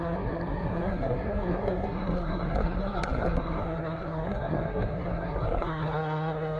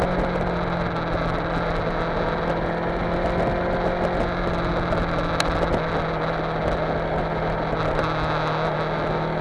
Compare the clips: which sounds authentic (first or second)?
second